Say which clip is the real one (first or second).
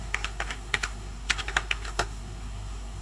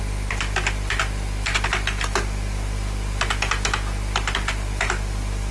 second